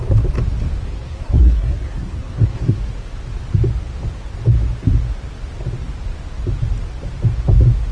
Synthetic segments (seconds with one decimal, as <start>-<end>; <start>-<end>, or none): 0.9-2.8